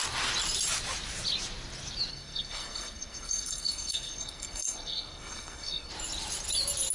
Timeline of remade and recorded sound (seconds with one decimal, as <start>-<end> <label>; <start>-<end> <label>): 0.0-2.1 recorded; 2.1-5.9 remade; 5.9-6.9 recorded